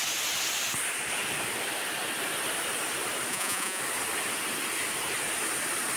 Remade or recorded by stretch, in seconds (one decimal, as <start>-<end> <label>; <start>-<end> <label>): 0.0-3.3 recorded; 3.3-3.8 remade; 3.8-6.0 recorded